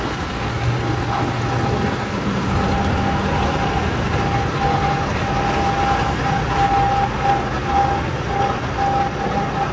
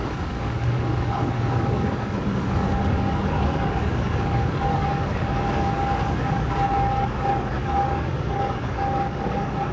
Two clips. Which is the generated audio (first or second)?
second